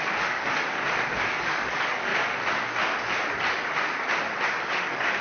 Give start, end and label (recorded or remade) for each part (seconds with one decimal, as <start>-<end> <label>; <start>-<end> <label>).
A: 0.0-0.8 remade; 0.8-1.3 recorded; 1.3-2.1 remade; 2.1-4.7 recorded; 4.7-5.2 remade